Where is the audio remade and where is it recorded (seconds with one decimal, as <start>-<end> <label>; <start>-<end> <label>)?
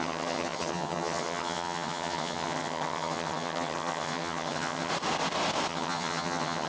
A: 0.0-4.9 remade; 4.9-5.7 recorded; 5.7-6.7 remade